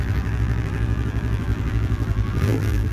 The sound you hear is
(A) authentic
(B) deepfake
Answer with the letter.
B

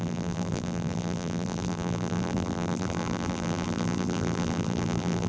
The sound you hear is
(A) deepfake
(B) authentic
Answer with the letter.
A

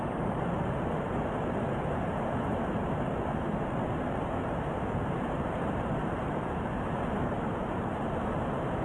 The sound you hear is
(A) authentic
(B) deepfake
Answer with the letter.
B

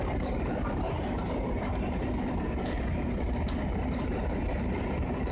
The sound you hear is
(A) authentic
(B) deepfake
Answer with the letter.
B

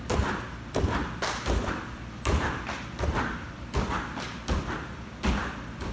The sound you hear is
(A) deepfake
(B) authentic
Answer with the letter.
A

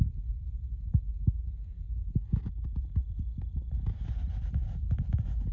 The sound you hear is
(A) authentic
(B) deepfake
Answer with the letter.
A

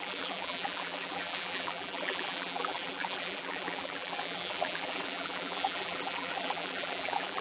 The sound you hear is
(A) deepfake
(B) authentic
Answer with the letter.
A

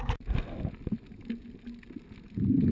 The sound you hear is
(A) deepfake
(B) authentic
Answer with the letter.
B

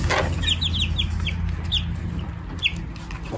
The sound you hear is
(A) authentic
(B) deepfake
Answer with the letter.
A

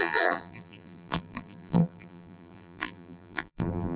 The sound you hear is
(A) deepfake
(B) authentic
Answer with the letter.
A